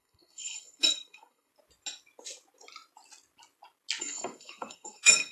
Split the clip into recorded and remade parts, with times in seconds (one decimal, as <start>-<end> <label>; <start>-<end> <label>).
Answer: 0.0-1.5 remade; 1.5-4.0 recorded; 4.0-5.3 remade